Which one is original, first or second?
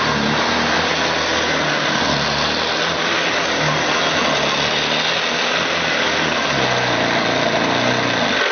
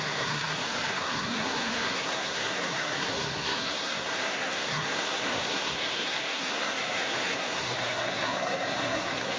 first